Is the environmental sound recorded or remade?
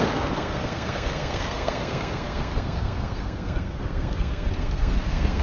remade